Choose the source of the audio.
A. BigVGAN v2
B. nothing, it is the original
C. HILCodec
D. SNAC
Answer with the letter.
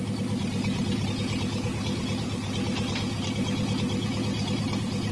B